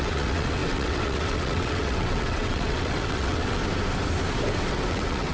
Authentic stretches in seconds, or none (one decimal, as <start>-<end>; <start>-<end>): 3.6-4.7